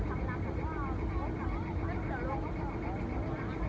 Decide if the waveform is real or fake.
real